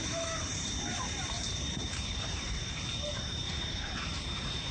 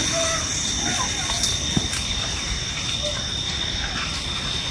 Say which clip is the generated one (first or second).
first